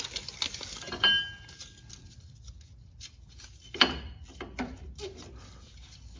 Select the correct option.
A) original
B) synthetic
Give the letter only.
A